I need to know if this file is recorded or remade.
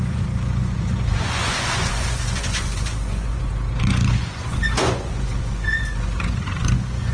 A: remade